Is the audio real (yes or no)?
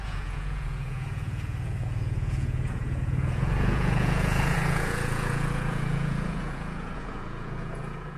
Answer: no